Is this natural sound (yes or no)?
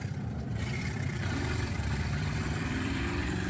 no